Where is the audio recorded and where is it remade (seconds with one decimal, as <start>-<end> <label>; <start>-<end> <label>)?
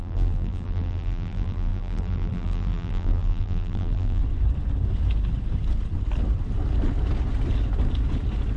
0.0-4.2 remade; 4.2-8.6 recorded